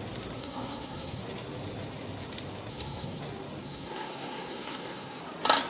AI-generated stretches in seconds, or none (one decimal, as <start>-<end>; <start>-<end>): 0.4-1.2; 2.7-3.2; 3.6-5.2